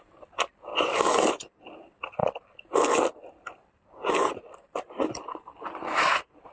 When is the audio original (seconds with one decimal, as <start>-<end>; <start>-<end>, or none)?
0.7-1.3; 2.2-3.3